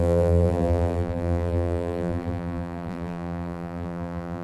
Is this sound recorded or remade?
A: remade